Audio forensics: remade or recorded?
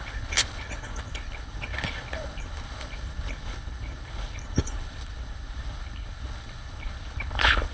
remade